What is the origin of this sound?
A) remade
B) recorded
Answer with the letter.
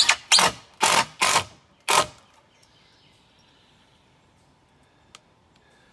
B